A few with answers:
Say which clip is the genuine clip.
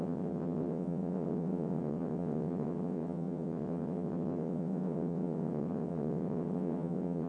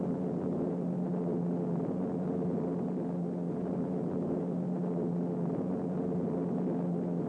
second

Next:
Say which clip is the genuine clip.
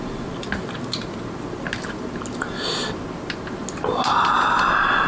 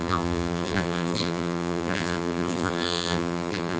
first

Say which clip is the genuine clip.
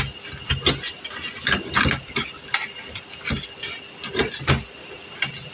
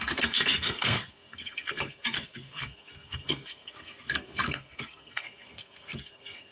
first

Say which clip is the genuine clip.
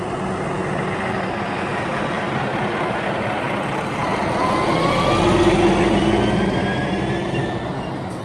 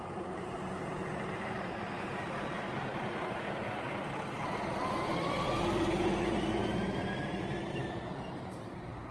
first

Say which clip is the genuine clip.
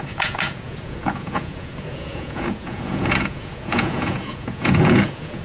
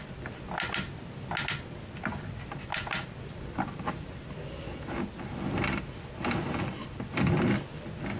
second